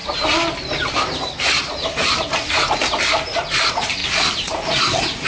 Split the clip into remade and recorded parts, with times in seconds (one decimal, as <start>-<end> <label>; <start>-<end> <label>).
0.0-5.3 recorded